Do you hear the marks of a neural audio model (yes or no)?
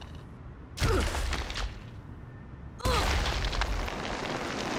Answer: no